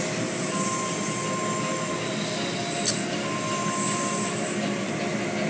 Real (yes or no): yes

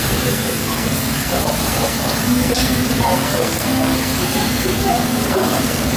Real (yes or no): no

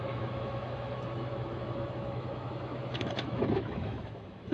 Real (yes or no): no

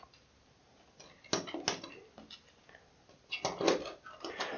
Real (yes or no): yes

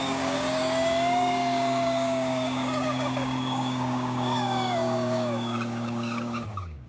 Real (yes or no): no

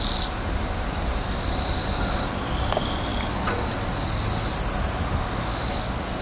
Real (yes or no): yes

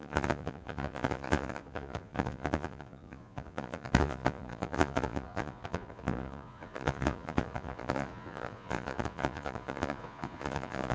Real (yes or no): no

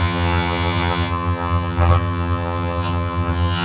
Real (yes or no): no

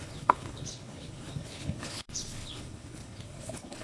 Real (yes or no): no